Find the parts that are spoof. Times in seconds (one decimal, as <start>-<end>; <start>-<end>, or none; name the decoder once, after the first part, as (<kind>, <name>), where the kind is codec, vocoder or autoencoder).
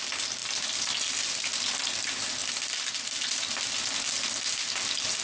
0.4-1.6 (vocoder, BigVGAN v2); 2.4-3.8